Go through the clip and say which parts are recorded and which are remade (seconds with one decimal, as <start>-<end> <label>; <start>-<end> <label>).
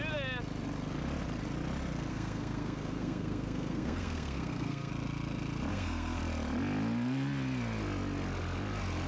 0.0-2.1 recorded; 2.1-4.9 remade; 4.9-5.7 recorded; 5.7-6.2 remade; 6.2-9.1 recorded